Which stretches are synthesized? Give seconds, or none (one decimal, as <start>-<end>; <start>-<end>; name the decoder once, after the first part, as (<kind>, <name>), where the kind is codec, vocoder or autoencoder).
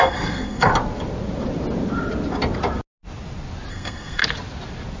0.0-0.7 (codec, SNAC); 3.7-4.2